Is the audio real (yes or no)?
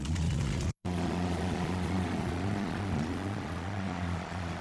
no